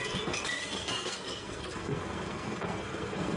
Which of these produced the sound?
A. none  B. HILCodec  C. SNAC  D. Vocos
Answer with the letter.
C